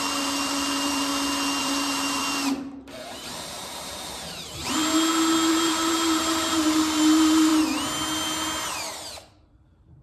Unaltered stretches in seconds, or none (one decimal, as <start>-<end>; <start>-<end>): 1.1-1.6; 2.2-3.0; 4.8-5.5; 7.5-8.7